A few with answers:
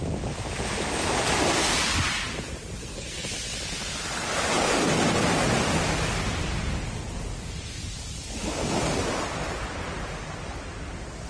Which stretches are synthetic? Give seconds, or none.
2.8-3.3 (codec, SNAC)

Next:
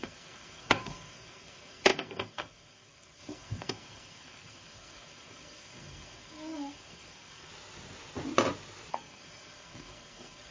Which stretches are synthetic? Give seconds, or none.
0.0-7.5 (codec, SNAC); 8.9-10.5

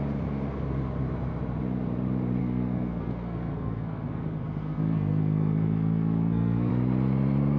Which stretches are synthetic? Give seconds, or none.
2.4-6.7 (codec, SNAC)

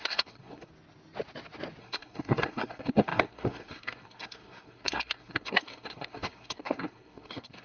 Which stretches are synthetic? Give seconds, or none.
0.0-0.7 (codec, SNAC); 1.8-7.6